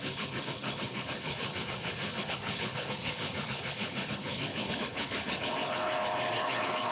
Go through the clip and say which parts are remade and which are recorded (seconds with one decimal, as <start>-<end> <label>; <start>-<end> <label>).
0.0-6.9 remade